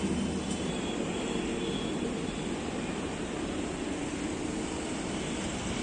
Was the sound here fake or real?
real